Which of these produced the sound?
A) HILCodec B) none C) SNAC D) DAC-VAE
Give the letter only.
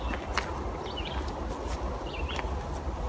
B